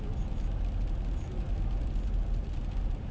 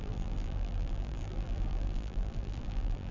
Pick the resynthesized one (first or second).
second